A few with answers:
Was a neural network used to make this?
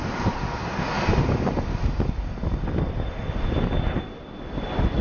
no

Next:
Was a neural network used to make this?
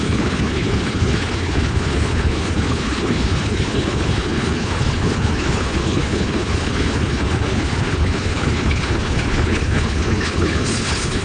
yes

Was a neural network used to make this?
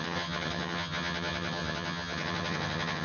yes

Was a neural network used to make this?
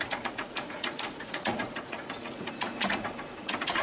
yes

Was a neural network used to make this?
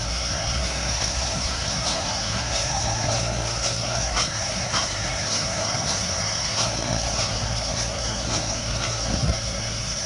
yes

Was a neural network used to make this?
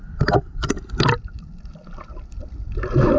no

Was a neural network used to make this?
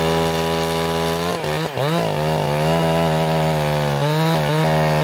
no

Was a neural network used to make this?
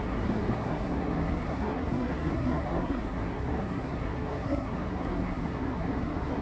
yes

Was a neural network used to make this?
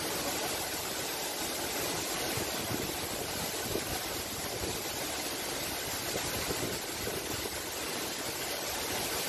no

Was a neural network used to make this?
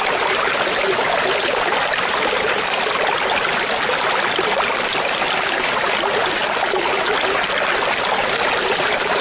no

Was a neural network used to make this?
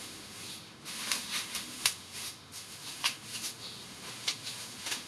yes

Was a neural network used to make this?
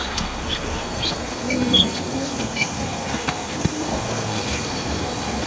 yes